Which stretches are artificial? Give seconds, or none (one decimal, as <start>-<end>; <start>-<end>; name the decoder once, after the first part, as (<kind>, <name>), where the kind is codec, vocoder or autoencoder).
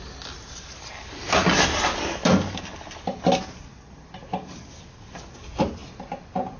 none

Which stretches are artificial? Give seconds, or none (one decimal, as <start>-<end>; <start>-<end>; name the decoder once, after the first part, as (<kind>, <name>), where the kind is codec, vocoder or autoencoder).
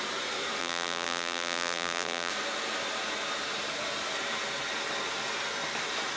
0.6-2.3 (vocoder, BigVGAN v2)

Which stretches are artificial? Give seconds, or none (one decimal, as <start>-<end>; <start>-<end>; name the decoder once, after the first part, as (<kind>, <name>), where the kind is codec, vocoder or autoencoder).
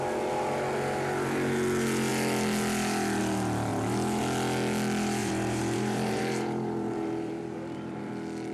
5.2-8.1 (vocoder, BigVGAN v2)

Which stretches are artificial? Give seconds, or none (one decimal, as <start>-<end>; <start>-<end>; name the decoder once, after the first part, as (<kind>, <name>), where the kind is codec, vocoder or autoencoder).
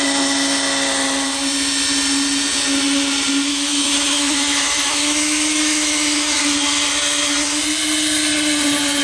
3.5-6.4 (autoencoder, DAC-VAE)